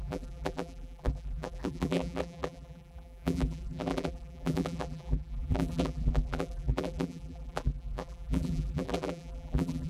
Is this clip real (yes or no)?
no